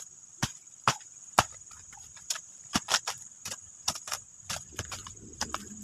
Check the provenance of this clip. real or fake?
fake